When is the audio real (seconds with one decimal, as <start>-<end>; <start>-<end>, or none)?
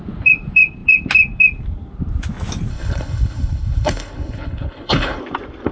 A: 0.0-2.7; 5.2-5.7